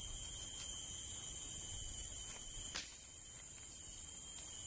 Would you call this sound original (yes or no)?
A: yes